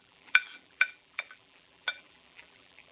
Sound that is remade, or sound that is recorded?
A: remade